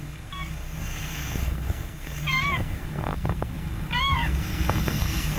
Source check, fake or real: fake